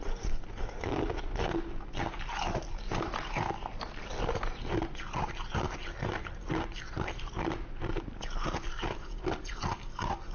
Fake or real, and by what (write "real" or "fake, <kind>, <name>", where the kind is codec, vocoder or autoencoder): real